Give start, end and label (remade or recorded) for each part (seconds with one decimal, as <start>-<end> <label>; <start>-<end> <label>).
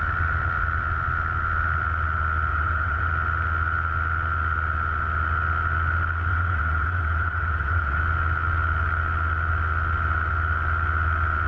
0.0-2.5 recorded; 2.5-3.1 remade; 3.1-6.3 recorded; 6.3-8.0 remade; 8.0-11.5 recorded